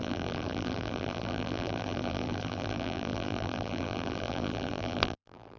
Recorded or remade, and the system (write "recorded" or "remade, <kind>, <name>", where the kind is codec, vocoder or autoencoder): remade, vocoder, BigVGAN v2